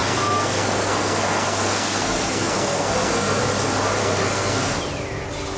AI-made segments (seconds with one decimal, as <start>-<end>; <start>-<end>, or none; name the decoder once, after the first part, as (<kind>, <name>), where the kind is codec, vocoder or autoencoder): 0.0-3.4 (codec, SNAC); 4.0-4.8